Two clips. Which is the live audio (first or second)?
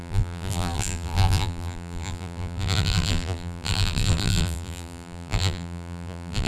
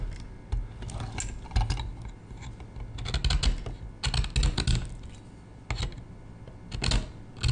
second